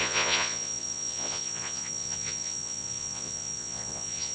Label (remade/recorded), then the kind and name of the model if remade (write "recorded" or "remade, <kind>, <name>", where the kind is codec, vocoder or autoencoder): remade, vocoder, Vocos